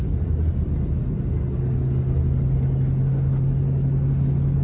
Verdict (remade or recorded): recorded